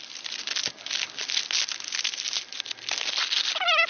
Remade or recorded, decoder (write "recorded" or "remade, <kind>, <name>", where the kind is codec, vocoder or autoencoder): recorded